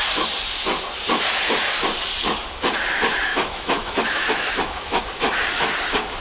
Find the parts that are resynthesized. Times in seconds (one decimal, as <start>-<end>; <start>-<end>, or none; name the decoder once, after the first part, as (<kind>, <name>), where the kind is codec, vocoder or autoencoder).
3.3-5.0 (autoencoder, DAC-VAE)